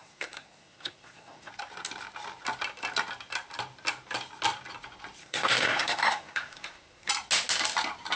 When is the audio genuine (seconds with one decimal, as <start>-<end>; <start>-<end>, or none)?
1.5-5.2; 7.1-8.2